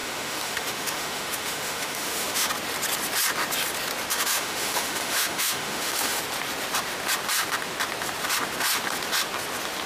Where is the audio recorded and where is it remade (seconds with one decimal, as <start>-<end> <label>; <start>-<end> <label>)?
0.0-2.5 remade; 2.5-4.1 recorded; 4.1-6.2 remade; 6.2-9.9 recorded